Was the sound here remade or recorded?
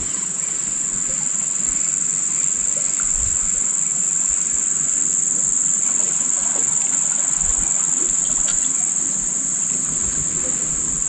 recorded